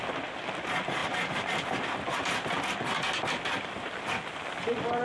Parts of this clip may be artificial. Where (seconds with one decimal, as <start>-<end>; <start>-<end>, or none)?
none